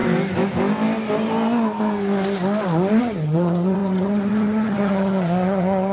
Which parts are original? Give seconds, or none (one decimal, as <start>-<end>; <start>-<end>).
0.0-3.0